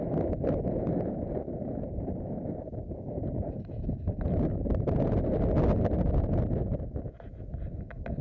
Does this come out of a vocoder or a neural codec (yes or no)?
no